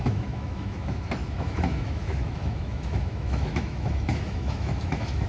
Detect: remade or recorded remade